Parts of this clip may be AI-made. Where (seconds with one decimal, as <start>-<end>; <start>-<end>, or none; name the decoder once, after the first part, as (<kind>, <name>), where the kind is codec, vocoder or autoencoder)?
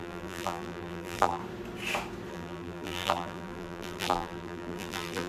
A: 0.0-1.4 (vocoder, BigVGAN v2); 2.3-5.3